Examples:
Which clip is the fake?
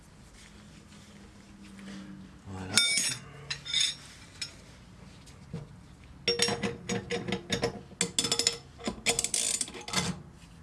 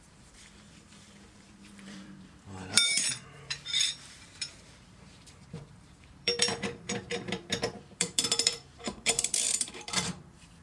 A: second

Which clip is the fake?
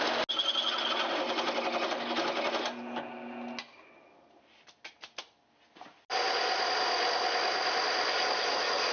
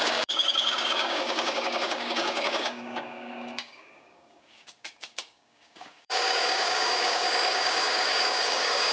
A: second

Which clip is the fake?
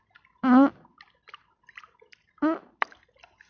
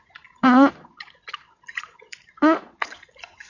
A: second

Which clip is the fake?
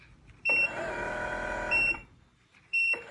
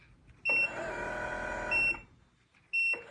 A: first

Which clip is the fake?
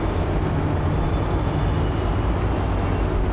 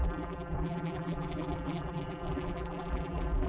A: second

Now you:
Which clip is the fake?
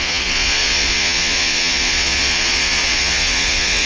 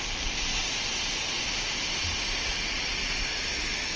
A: first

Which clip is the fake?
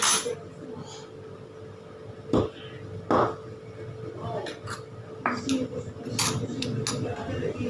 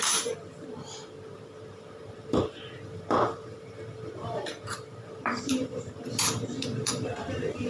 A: second